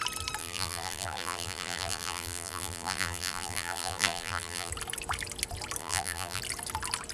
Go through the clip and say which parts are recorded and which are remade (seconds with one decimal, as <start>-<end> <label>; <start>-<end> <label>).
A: 0.0-0.4 recorded; 0.4-4.7 remade; 4.7-5.8 recorded; 5.8-6.4 remade; 6.4-7.1 recorded